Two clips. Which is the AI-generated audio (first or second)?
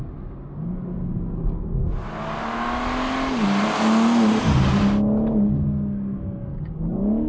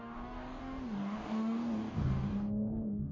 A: second